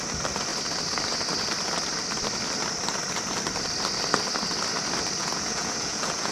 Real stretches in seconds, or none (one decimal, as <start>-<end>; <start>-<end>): 0.0-5.2